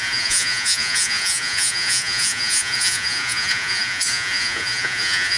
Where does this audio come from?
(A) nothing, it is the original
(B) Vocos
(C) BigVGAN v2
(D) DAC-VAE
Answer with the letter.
B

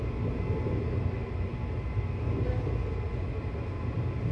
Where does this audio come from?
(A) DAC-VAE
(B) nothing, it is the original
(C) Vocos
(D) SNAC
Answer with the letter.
B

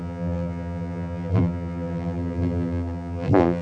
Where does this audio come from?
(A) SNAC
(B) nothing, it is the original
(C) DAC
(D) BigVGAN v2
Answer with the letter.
D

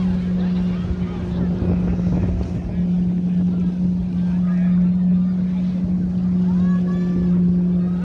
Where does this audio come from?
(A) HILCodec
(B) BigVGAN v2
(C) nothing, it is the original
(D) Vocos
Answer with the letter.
C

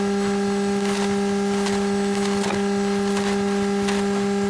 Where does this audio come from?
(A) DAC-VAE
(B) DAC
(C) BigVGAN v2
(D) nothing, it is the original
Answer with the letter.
D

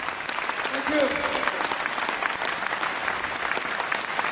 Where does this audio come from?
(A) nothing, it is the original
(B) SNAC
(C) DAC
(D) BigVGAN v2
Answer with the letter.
A